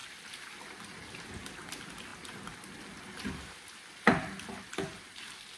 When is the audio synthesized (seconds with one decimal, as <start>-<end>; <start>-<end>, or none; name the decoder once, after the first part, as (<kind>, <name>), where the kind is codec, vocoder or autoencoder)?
none